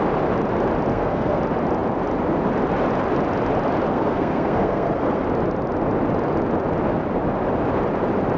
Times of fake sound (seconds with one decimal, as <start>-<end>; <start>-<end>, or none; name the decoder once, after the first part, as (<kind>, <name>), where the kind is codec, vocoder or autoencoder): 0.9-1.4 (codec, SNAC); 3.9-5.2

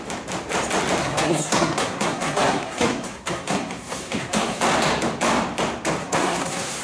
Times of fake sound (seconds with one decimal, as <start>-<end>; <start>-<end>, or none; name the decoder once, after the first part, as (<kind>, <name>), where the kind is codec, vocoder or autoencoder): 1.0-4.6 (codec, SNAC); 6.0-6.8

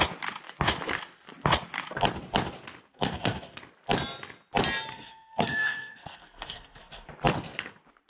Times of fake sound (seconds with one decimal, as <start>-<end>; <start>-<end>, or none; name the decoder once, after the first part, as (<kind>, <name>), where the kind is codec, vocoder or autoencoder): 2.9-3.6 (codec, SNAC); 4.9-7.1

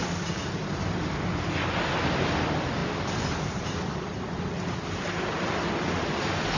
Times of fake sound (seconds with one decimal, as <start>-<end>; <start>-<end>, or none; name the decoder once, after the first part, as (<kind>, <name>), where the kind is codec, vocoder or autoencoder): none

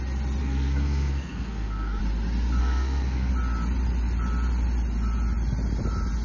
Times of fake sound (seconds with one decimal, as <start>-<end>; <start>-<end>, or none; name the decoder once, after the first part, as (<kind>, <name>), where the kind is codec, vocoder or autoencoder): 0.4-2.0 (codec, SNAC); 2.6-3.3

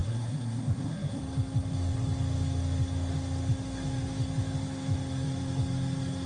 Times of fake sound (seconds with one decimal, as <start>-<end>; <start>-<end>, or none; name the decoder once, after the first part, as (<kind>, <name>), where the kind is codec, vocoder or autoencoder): 0.0-1.2 (codec, SNAC)